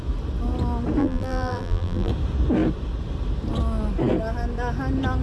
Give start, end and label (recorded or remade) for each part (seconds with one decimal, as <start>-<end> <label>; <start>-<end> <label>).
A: 0.0-1.0 recorded; 1.0-2.1 remade; 2.1-5.2 recorded